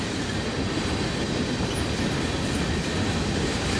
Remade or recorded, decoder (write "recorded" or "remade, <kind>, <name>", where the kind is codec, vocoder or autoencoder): remade, vocoder, BigVGAN v2